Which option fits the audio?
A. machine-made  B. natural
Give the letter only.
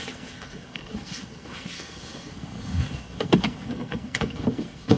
A